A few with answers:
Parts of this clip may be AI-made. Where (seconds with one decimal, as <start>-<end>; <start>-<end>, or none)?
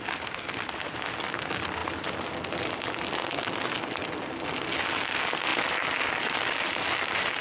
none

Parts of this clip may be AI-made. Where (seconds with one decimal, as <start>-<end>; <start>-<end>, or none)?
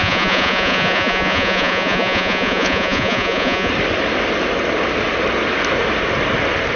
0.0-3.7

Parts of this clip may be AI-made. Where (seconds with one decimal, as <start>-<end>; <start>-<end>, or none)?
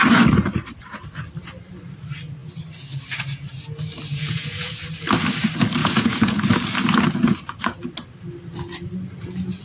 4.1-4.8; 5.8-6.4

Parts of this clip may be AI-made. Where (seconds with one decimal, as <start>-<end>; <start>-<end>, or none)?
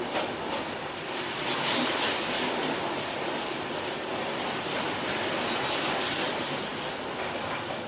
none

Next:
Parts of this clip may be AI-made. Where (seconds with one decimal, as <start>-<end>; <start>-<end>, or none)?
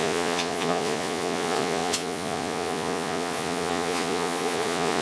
0.0-5.0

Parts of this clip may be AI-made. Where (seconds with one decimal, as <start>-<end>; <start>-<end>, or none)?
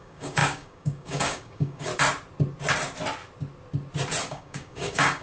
0.0-1.9; 4.3-5.2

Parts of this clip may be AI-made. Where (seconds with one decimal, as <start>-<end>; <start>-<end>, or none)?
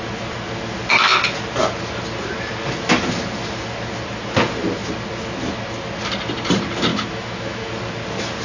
6.9-7.7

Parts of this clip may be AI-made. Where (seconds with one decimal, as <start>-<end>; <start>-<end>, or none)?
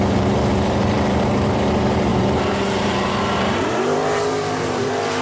0.0-5.2